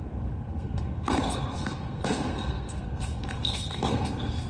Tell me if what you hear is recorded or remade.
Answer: remade